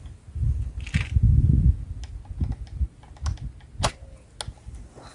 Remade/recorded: recorded